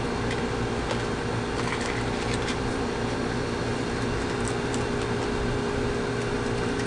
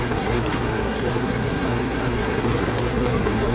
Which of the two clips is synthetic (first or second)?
second